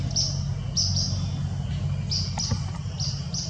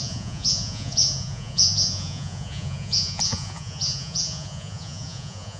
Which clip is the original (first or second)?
first